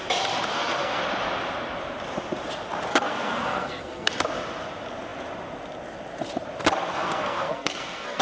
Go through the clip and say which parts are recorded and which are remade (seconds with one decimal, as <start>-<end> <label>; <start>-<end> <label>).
0.0-0.5 recorded; 0.5-1.0 remade; 1.0-2.9 recorded; 2.9-4.1 remade; 4.1-6.9 recorded; 6.9-8.2 remade